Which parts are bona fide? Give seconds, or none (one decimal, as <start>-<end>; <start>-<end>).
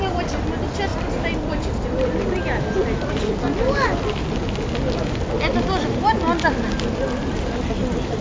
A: 0.0-8.2